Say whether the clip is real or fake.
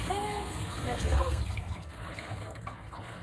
fake